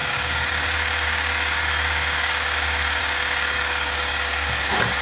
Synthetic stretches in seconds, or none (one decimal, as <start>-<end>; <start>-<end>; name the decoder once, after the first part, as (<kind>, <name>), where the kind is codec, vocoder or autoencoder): 0.0-5.0 (codec, DAC)